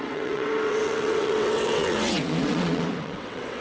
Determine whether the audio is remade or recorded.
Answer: remade